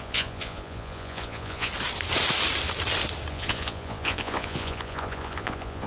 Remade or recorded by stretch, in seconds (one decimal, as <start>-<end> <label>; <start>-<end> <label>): 0.0-1.7 remade; 1.7-3.3 recorded; 3.3-5.9 remade